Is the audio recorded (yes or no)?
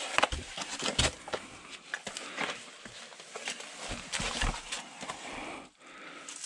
yes